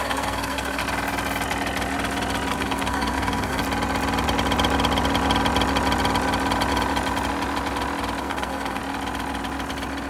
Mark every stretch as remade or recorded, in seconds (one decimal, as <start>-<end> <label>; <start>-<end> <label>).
0.0-0.8 remade; 0.8-2.5 recorded; 2.5-3.6 remade; 3.6-8.2 recorded; 8.2-8.8 remade; 8.8-10.1 recorded

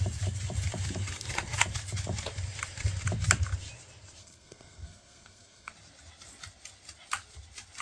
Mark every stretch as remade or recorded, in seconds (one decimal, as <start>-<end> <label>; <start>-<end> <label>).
0.0-4.2 recorded; 4.2-5.7 remade; 5.7-7.8 recorded

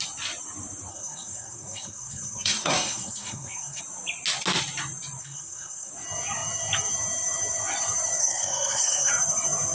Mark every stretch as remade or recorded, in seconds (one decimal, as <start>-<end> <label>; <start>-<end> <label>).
0.0-0.9 recorded; 0.9-3.8 remade; 3.8-5.2 recorded; 5.2-5.9 remade; 5.9-8.2 recorded; 8.2-9.1 remade; 9.1-9.7 recorded

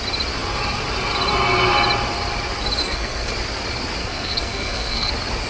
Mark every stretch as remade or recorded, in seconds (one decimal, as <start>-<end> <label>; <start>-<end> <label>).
0.0-2.8 recorded; 2.8-3.3 remade; 3.3-4.0 recorded; 4.0-5.1 remade; 5.1-5.5 recorded

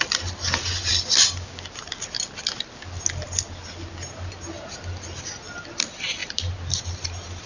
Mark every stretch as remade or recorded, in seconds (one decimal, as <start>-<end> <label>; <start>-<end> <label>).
0.0-7.5 recorded

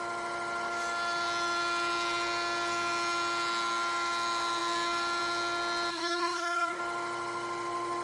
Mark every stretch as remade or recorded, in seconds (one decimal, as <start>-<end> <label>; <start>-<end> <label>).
0.0-5.9 recorded; 5.9-6.8 remade; 6.8-8.0 recorded

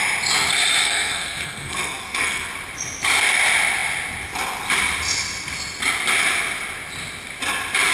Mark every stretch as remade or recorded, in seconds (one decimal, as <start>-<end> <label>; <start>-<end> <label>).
0.0-0.8 recorded; 0.8-2.5 remade; 2.5-7.9 recorded